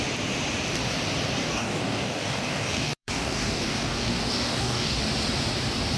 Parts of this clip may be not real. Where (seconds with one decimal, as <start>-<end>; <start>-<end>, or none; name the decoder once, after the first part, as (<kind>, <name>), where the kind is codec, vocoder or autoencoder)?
1.4-5.0 (codec, DAC)